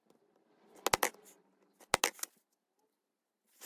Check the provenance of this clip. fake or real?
real